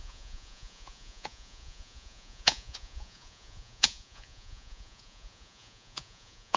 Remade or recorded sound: remade